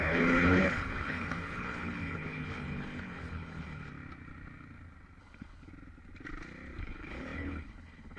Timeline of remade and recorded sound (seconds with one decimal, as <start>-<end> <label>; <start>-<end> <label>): 0.0-3.9 remade; 3.9-5.2 recorded; 5.2-5.7 remade; 5.7-6.8 recorded; 6.8-8.2 remade